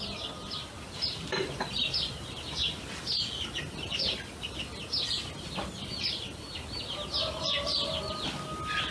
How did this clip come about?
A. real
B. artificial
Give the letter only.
A